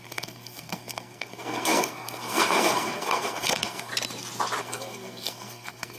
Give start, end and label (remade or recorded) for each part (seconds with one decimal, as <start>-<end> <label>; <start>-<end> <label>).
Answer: 0.0-3.9 remade; 3.9-4.6 recorded; 4.6-6.0 remade